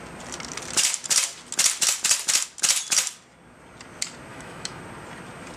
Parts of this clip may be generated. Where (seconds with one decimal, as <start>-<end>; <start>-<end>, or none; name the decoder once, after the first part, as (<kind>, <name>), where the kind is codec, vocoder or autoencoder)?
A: 4.3-4.8 (autoencoder, DAC-VAE)